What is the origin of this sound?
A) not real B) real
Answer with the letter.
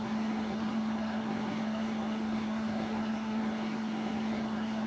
A